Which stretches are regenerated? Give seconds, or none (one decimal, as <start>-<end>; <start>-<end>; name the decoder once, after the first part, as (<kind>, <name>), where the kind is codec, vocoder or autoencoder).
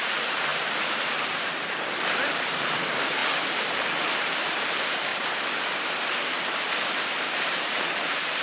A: 0.0-5.1 (vocoder, BigVGAN v2); 7.2-8.4